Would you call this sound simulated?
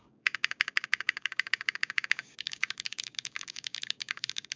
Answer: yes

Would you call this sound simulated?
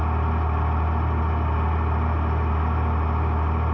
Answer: no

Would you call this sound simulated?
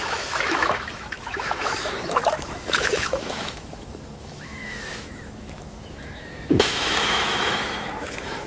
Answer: yes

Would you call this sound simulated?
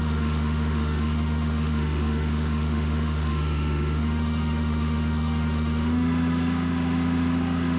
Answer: yes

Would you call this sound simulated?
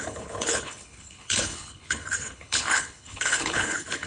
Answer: yes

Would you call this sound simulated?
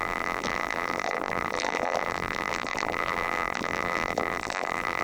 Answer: yes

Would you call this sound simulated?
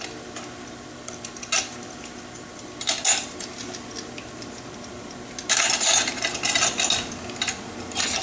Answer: no